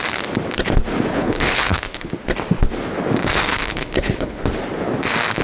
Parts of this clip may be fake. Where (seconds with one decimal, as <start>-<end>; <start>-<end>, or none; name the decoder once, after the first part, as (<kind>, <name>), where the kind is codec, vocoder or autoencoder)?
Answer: 1.1-2.1 (codec, HILCodec); 3.3-4.4